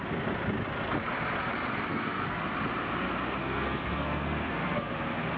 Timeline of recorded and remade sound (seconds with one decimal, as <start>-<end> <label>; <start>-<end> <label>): 0.0-1.9 recorded; 1.9-2.4 remade; 2.4-3.4 recorded; 3.4-4.9 remade; 4.9-5.4 recorded